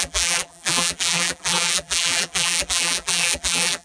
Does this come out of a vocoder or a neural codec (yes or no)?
yes